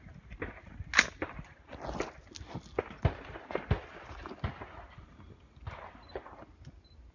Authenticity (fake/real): real